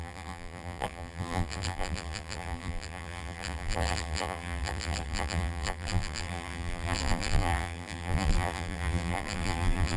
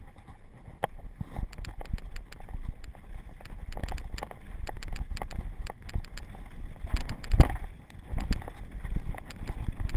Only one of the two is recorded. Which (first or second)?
second